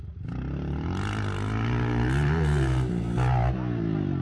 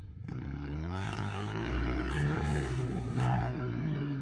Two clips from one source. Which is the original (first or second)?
first